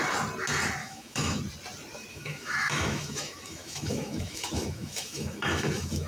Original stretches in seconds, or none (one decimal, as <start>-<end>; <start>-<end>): 0.0-0.8; 1.4-2.1